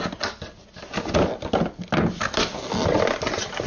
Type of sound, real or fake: real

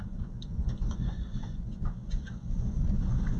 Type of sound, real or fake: fake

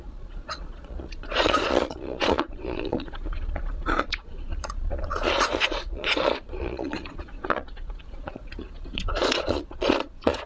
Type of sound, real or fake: fake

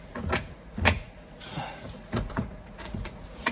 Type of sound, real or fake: fake